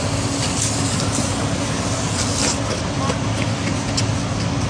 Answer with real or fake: real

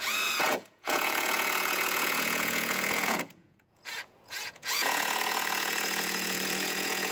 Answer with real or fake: fake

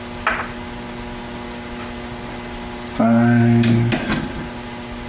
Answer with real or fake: real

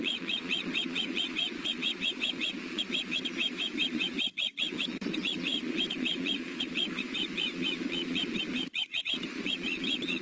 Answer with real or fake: fake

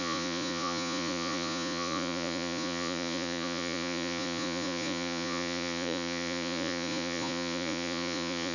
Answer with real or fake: fake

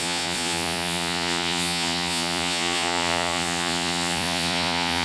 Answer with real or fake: fake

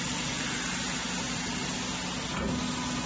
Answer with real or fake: real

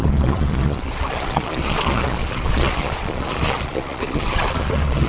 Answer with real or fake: fake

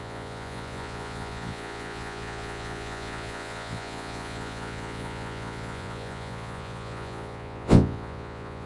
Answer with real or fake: fake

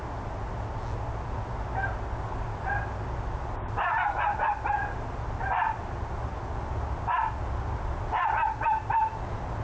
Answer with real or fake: real